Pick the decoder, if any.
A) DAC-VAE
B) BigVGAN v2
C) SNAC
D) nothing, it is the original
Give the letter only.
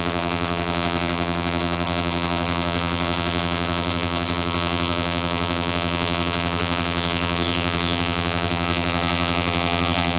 B